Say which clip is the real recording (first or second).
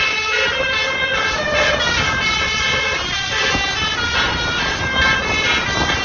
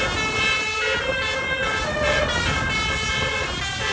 second